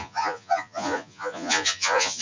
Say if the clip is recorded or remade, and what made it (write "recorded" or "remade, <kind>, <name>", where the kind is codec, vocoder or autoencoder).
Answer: remade, vocoder, Vocos